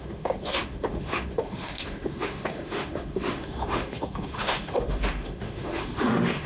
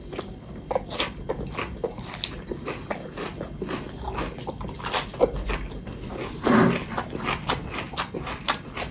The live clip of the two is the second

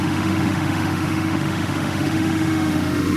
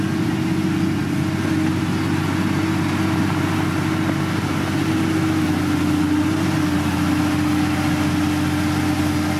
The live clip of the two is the second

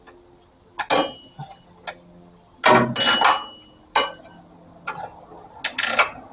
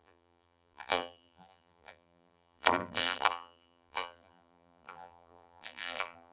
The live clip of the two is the first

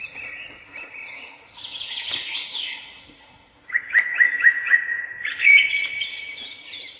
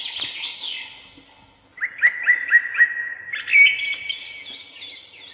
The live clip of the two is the second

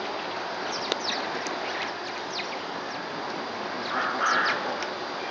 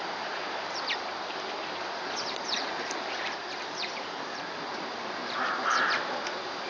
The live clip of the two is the first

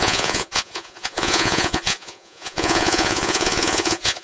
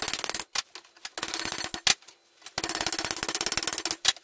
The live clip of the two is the second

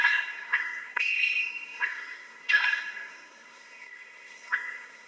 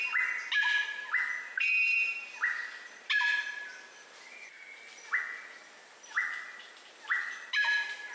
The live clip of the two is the second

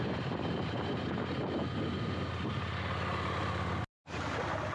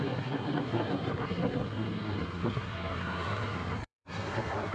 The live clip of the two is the first